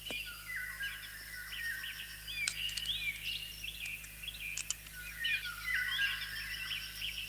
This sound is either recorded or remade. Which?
recorded